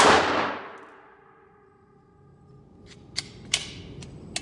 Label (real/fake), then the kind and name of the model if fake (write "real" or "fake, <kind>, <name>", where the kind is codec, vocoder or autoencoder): real